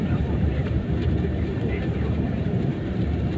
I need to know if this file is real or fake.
fake